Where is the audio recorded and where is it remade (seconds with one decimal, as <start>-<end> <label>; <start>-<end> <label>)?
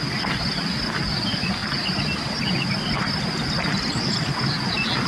0.0-5.1 recorded